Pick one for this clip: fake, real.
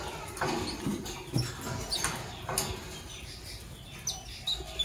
real